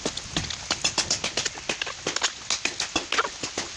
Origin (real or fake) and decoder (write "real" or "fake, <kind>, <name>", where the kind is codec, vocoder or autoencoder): real